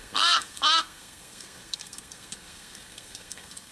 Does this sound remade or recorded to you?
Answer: remade